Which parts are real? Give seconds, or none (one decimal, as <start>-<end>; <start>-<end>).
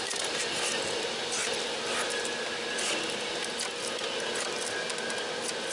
0.0-5.7